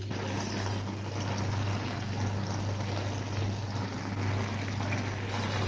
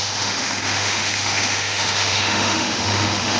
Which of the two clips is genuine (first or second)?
first